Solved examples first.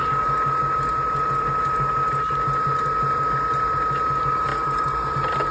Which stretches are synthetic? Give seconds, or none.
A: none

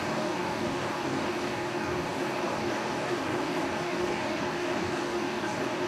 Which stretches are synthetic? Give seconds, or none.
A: 0.0-5.9 (codec, DAC)

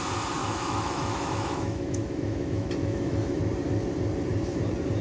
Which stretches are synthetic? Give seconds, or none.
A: 0.4-3.4 (autoencoder, DAC-VAE)

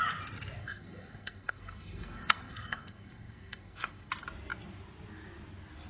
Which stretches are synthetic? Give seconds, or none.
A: 0.6-4.1 (codec, SNAC)

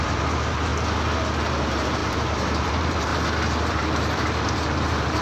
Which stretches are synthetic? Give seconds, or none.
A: 0.0-0.7 (vocoder, BigVGAN v2); 1.4-3.1; 3.7-5.2

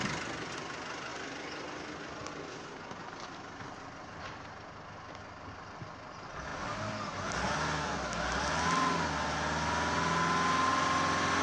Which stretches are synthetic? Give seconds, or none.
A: none